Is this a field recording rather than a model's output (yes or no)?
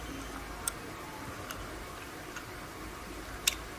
yes